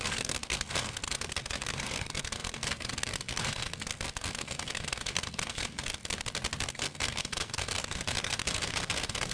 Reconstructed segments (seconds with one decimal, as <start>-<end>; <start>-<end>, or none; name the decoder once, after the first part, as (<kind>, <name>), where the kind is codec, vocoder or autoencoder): 0.0-6.0 (codec, SNAC); 6.7-9.3